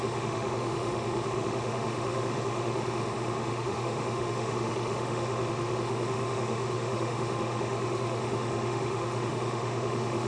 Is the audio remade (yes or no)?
yes